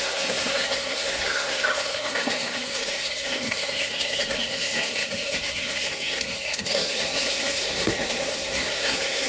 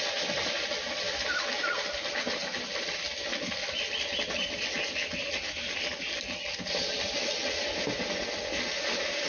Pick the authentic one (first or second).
second